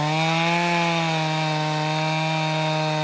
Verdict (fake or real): real